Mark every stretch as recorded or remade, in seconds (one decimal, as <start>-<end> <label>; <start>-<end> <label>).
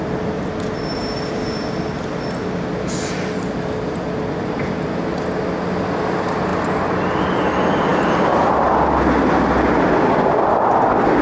0.0-11.2 recorded